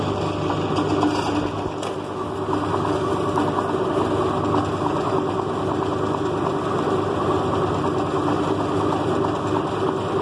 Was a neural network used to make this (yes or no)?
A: no